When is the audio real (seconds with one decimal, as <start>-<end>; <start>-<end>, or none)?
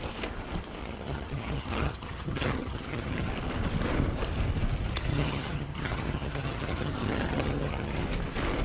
0.0-0.8; 3.3-5.1; 8.0-8.6